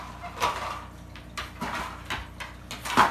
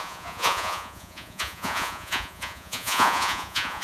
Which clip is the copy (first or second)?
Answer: second